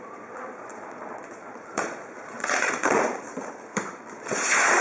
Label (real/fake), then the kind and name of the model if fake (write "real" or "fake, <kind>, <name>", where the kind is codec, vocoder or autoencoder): fake, vocoder, Vocos